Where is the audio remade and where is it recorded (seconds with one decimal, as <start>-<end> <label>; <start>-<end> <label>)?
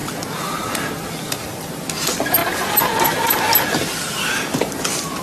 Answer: 0.0-5.2 recorded